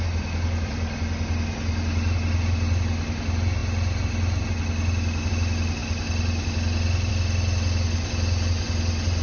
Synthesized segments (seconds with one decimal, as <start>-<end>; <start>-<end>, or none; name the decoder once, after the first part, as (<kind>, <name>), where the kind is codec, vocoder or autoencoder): none